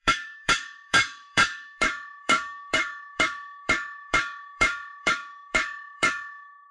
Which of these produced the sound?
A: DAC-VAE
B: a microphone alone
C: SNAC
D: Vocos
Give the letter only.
A